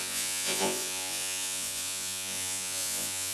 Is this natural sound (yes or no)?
no